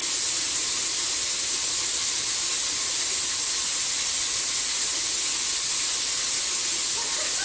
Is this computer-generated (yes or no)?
no